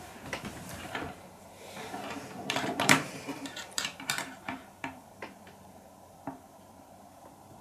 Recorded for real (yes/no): no